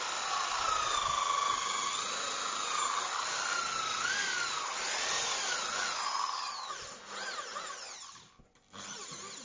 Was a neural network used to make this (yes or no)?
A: no